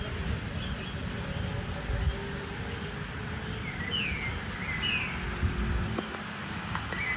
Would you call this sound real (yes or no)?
yes